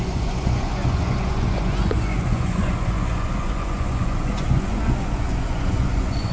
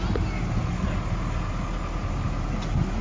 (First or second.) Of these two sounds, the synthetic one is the first